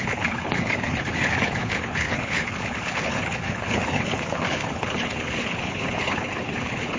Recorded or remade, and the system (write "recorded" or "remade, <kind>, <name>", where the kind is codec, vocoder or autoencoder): remade, codec, HILCodec